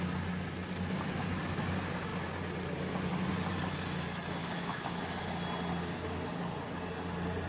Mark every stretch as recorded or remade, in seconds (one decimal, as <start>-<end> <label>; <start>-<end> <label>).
0.0-4.4 recorded; 4.4-5.0 remade; 5.0-7.5 recorded